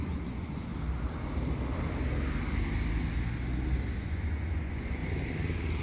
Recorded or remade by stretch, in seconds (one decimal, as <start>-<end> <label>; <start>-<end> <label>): 0.0-0.7 remade; 0.7-4.0 recorded; 4.0-5.0 remade; 5.0-5.8 recorded